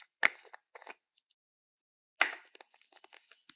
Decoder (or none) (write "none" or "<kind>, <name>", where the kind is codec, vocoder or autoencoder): none